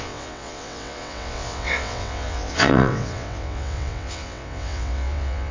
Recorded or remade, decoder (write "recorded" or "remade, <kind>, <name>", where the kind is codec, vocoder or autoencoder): remade, vocoder, WaveNeXt